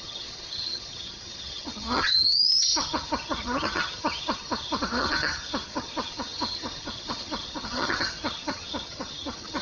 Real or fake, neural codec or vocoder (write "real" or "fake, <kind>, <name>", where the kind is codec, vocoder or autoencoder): fake, vocoder, HiFi-GAN